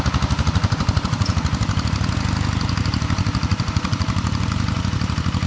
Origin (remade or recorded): recorded